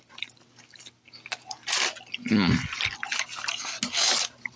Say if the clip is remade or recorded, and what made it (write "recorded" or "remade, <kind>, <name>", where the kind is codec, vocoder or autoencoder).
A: recorded